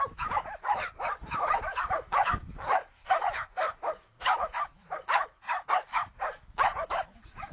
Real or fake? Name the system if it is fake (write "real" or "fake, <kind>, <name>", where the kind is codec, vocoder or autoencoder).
fake, autoencoder, DAC-VAE